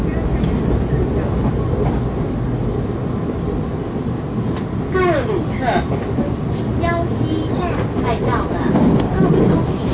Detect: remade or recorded recorded